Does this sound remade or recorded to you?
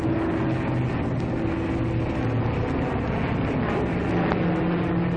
recorded